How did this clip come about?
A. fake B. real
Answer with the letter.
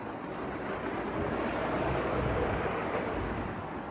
B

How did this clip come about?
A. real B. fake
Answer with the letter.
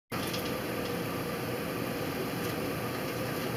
A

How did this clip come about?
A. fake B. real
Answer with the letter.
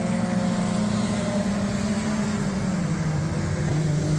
B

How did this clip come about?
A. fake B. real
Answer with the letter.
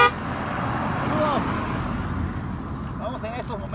B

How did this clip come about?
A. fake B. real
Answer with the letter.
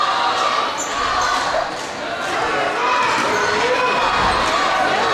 B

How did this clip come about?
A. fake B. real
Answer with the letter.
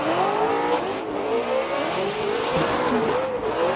B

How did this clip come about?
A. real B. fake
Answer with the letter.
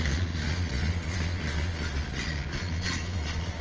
B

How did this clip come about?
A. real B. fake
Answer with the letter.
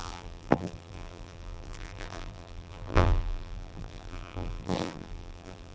B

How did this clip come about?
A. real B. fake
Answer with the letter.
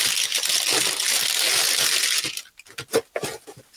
A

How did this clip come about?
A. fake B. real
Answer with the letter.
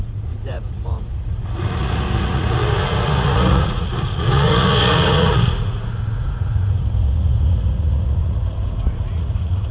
A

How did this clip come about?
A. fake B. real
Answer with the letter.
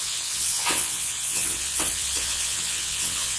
A